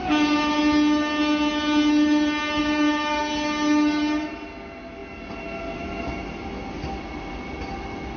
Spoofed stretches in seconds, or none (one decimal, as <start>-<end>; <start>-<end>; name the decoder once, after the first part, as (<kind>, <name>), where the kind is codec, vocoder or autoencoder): 0.0-0.6 (vocoder, BigVGAN v2); 2.6-3.2